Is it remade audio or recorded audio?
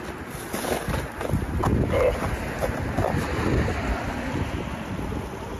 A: recorded